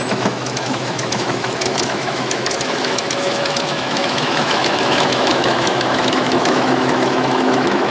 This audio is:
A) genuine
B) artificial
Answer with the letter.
B